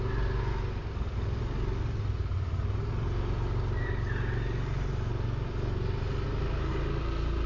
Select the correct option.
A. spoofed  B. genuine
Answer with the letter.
B